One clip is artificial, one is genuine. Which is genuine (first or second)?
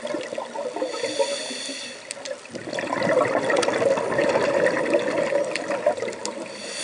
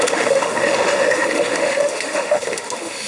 first